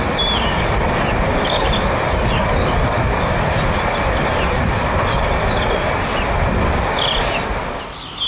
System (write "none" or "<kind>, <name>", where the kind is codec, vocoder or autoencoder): none